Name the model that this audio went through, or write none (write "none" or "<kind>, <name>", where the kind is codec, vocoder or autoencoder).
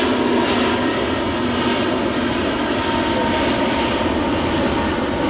none